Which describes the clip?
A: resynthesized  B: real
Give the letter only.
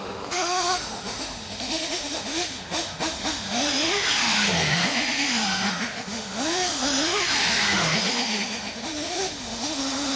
A